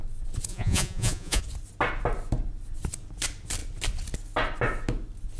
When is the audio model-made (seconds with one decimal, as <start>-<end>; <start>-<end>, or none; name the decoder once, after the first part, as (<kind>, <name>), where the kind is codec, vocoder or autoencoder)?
0.5-1.4 (vocoder, Vocos)